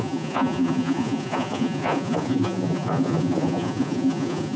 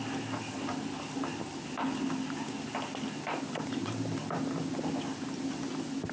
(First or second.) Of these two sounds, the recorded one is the second